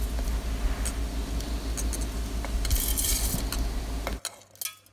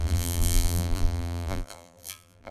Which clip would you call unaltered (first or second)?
first